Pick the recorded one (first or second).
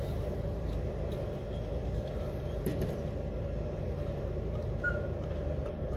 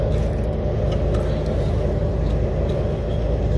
second